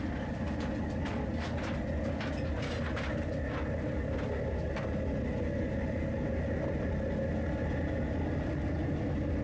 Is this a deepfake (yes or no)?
no